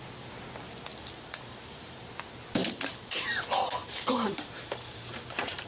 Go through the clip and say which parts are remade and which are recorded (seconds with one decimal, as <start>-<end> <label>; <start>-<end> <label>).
0.0-0.9 recorded; 0.9-2.1 remade; 2.1-3.8 recorded; 3.8-5.7 remade